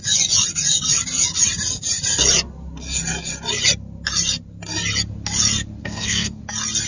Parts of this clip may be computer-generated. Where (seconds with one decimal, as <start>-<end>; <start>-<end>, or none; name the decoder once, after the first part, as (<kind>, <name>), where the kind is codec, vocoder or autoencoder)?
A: 5.8-6.4 (codec, SNAC)